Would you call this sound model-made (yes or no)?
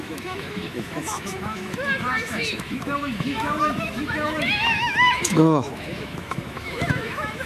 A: yes